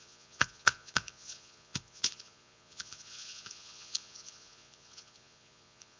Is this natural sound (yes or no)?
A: no